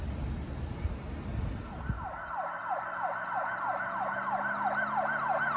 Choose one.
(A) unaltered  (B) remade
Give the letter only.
A